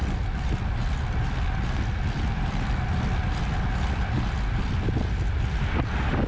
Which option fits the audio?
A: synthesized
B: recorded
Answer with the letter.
B